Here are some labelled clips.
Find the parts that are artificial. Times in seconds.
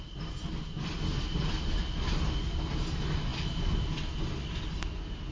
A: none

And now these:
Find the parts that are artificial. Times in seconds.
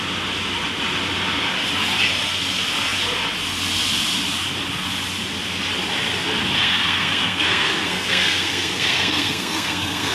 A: 6.6-10.1 (codec, SNAC)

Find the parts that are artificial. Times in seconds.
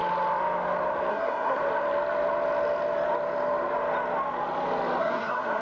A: 1.1-1.6 (codec, SNAC); 5.0-5.6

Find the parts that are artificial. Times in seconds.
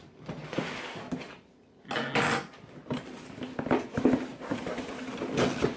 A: none